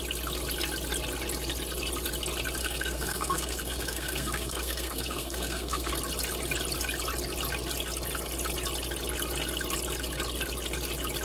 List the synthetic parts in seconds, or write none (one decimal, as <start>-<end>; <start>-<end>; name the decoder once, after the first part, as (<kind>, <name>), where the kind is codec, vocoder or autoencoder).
2.6-5.9 (codec, SNAC)